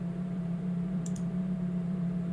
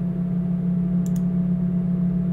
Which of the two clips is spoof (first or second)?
first